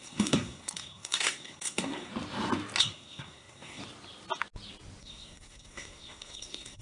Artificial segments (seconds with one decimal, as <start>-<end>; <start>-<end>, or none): 0.0-2.1; 2.8-3.8; 5.0-6.8